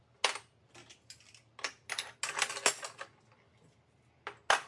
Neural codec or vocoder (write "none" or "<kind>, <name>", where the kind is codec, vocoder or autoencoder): none